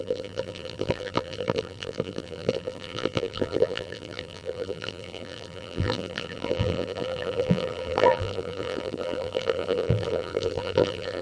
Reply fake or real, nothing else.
fake